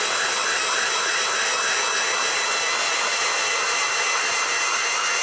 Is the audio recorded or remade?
recorded